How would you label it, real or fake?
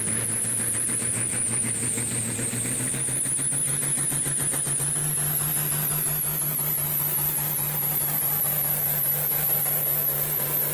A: real